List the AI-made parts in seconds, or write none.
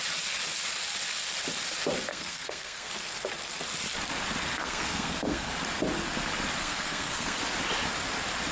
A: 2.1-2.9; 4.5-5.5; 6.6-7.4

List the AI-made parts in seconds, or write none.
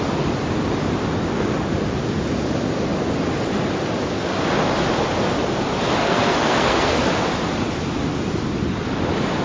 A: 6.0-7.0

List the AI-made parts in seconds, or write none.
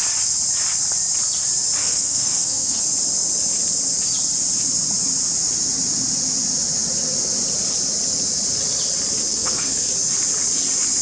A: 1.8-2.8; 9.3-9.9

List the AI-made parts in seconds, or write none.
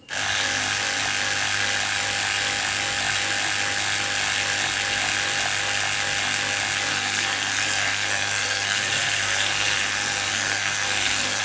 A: 6.9-11.4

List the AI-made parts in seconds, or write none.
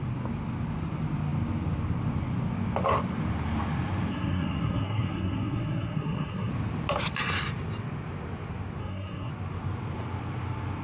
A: 4.1-6.5; 8.8-9.3